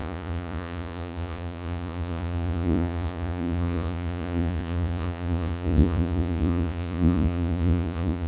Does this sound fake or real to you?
fake